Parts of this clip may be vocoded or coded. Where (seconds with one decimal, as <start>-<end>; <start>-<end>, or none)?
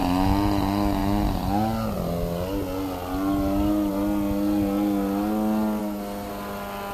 5.8-6.3